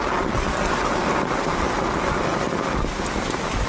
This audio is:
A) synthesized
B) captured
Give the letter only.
B